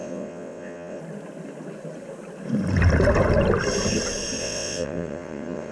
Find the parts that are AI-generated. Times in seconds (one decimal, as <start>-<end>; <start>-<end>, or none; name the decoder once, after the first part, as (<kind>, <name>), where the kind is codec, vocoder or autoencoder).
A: 0.0-1.0 (vocoder, WaveNeXt); 4.4-5.7